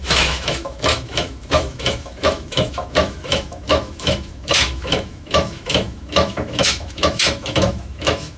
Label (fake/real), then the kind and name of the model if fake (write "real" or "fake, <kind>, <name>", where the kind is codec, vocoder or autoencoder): fake, autoencoder, DAC-VAE